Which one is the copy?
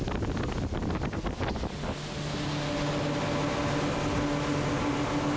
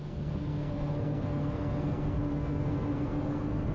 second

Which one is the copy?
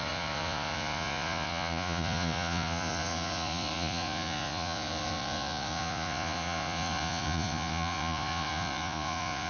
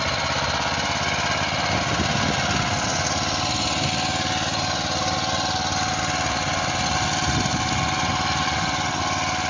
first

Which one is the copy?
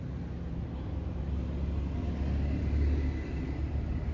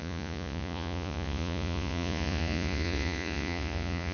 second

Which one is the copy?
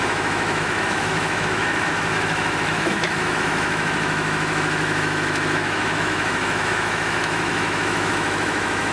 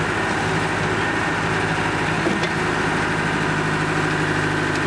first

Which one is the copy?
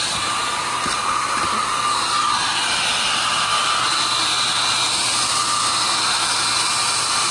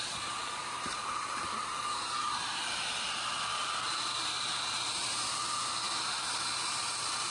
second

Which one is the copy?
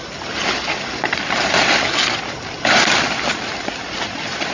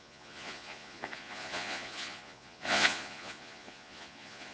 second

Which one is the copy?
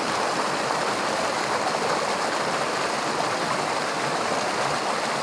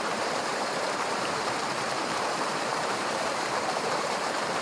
second